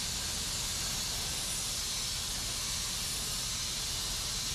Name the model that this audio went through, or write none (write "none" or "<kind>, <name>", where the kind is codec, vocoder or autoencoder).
none